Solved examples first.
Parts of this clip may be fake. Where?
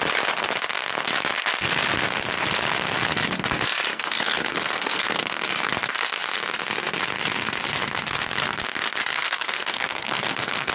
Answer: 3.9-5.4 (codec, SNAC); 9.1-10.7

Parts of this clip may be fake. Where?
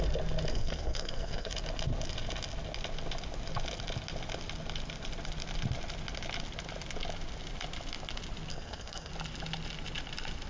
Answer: 0.5-1.5 (codec, SNAC); 8.5-9.1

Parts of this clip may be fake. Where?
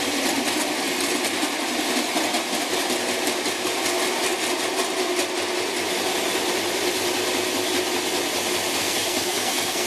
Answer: 8.8-9.9 (codec, SNAC)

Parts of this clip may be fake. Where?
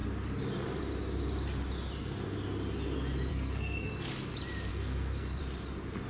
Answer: 3.3-3.9 (codec, SNAC); 4.7-5.4